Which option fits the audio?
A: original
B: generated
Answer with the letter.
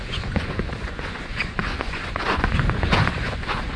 B